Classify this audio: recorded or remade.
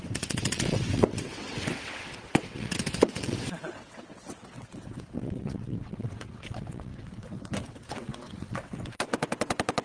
remade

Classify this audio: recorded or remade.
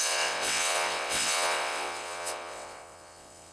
remade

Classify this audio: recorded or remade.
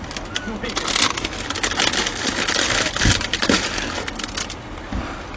recorded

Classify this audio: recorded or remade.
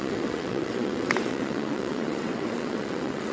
remade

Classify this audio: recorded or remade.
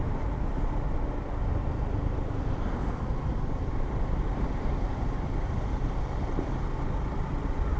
recorded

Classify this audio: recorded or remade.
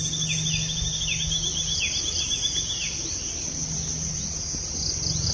recorded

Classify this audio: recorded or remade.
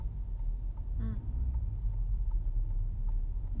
recorded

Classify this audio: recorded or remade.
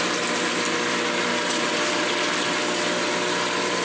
recorded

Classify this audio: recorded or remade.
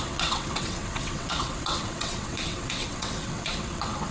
remade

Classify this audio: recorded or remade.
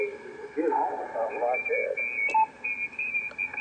recorded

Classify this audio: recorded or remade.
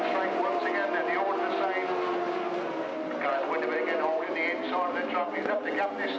recorded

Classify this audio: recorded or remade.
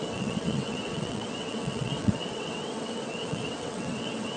remade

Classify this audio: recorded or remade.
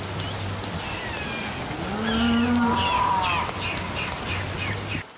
recorded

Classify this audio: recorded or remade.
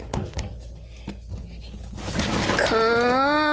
recorded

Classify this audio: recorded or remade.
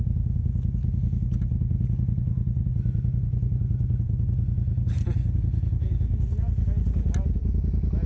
recorded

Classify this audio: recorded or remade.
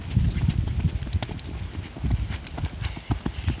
recorded